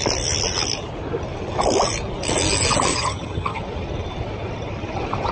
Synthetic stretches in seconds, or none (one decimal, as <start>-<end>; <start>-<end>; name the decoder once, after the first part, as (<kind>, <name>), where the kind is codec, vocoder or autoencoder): 2.9-3.6 (vocoder, HiFi-GAN)